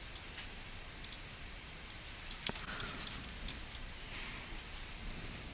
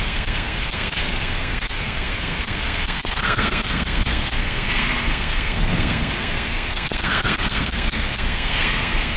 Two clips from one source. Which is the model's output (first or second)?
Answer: second